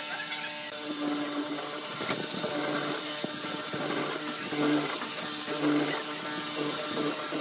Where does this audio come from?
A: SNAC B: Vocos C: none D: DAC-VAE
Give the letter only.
C